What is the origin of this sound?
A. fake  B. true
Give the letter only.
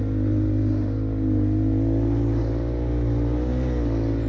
B